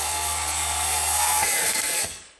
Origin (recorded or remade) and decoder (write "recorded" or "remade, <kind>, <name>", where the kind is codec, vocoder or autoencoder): remade, codec, SNAC